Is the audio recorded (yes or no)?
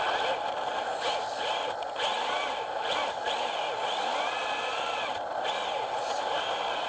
yes